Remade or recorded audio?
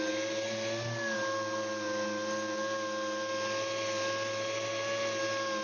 recorded